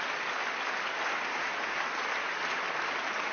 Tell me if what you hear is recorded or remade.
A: recorded